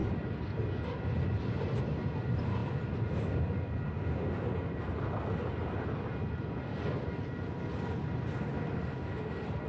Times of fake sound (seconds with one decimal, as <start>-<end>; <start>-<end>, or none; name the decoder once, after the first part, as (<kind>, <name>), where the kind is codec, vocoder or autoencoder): none